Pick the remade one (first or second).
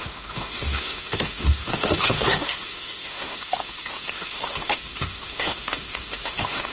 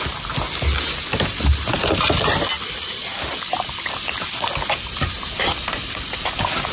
first